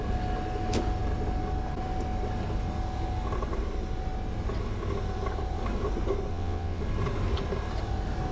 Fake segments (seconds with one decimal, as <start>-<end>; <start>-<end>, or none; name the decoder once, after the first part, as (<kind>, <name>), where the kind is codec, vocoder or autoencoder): 6.3-6.8 (vocoder, WaveNeXt)